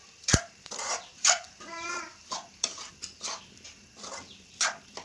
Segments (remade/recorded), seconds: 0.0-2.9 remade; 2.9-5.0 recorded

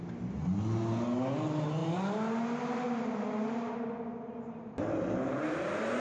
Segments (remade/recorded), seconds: 0.0-6.0 recorded

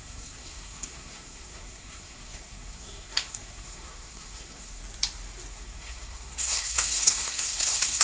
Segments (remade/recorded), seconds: 0.0-4.8 remade; 4.8-5.5 recorded; 5.5-8.0 remade

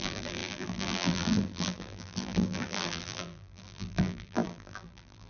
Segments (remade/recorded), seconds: 0.0-5.3 remade

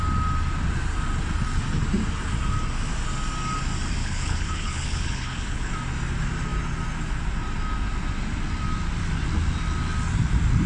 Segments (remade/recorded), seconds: 0.0-4.0 recorded; 4.0-5.7 remade; 5.7-10.7 recorded

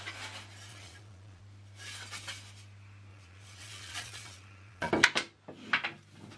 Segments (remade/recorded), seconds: 0.0-0.7 recorded; 0.7-1.4 remade; 1.4-3.1 recorded; 3.1-4.9 remade; 4.9-6.4 recorded

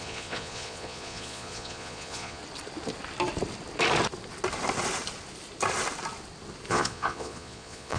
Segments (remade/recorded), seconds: 0.0-2.4 remade; 2.4-6.7 recorded; 6.7-8.0 remade